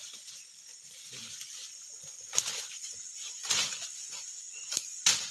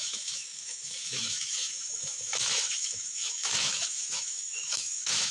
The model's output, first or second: second